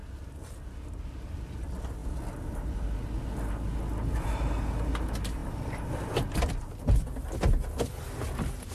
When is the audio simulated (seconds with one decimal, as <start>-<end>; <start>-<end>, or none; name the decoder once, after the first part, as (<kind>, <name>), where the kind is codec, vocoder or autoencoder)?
none